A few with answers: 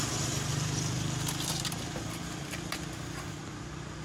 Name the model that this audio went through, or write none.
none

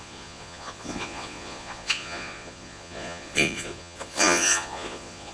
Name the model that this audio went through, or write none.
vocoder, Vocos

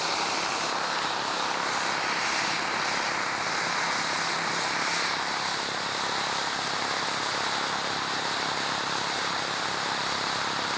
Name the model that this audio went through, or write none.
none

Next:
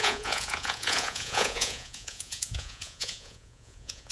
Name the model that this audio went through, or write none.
vocoder, Vocos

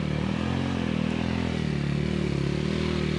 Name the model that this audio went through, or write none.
none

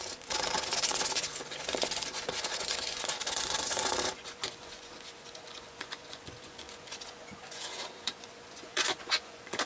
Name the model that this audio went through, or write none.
vocoder, Vocos